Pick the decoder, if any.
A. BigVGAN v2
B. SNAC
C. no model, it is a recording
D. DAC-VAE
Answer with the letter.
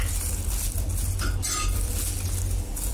C